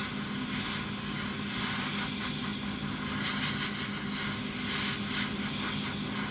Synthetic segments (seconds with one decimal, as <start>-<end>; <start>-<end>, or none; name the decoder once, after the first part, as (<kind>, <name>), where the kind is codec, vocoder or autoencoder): none